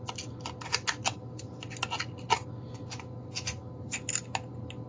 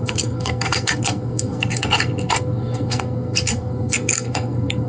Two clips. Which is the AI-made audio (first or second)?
second